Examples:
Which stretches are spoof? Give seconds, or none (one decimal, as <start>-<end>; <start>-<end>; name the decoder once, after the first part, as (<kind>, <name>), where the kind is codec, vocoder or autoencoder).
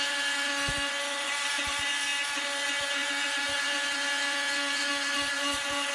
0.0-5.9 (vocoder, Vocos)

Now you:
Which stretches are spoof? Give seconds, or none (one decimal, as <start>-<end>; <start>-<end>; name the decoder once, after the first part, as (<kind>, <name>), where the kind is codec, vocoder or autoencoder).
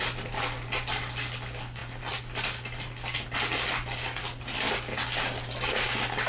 none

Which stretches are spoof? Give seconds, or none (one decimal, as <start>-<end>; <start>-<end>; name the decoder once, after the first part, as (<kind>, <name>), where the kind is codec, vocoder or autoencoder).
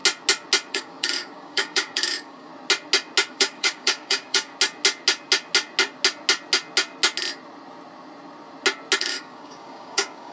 0.7-2.5 (codec, DAC); 3.3-4.5; 9.0-10.3